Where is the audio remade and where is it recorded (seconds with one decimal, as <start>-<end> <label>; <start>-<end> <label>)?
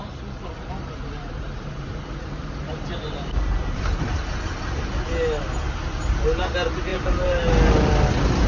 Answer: 0.0-4.9 remade; 4.9-6.9 recorded; 6.9-7.5 remade; 7.5-8.5 recorded